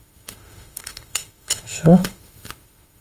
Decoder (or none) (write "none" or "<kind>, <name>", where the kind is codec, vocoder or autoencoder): autoencoder, DAC-VAE